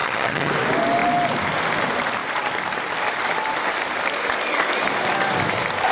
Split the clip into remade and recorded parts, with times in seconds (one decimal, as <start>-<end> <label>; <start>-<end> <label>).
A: 0.0-0.5 remade; 0.5-5.9 recorded